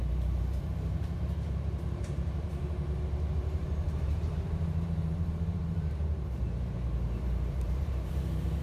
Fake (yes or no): yes